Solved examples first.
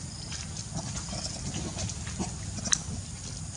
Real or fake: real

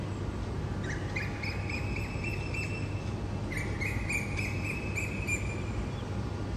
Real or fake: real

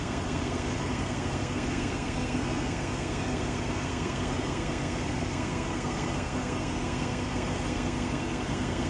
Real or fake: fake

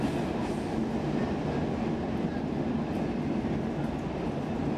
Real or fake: real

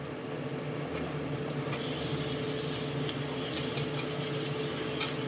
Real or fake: real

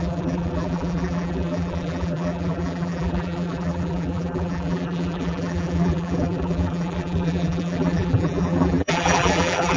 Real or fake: fake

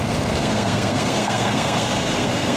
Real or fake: fake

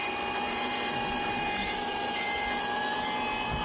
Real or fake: real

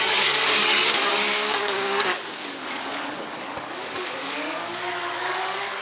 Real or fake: fake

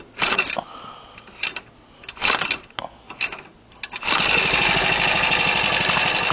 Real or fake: real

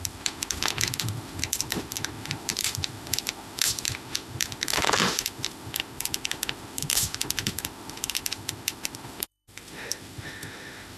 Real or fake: fake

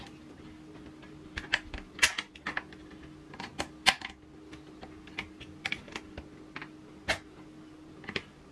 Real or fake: real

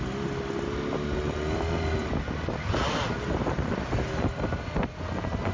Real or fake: real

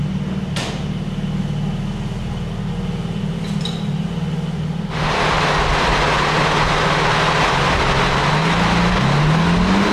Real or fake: real